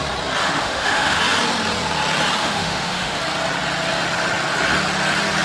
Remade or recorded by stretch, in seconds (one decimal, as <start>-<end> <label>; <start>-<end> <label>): 0.0-0.4 recorded; 0.4-1.2 remade; 1.2-2.4 recorded; 2.4-3.2 remade; 3.2-5.4 recorded